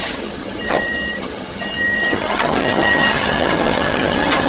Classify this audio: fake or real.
fake